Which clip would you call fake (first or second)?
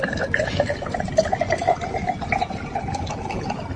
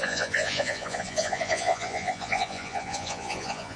second